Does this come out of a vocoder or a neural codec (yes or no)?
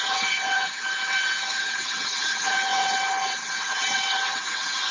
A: yes